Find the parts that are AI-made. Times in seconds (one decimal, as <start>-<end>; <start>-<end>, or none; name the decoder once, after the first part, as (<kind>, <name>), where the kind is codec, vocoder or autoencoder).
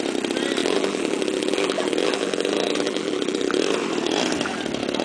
0.6-3.6 (vocoder, BigVGAN v2)